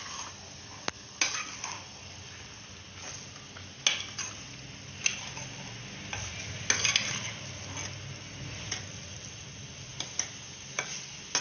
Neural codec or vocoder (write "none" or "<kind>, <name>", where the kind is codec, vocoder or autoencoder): none